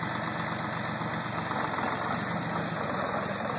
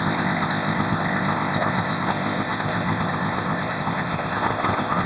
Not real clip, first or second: second